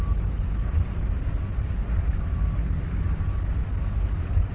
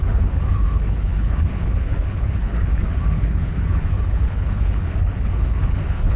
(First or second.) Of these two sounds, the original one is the first